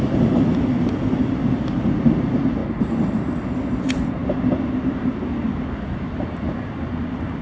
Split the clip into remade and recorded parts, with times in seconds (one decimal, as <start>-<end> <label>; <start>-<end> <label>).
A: 0.0-7.4 recorded